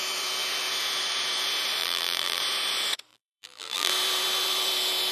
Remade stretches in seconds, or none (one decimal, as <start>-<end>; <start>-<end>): 1.8-2.4; 3.1-3.9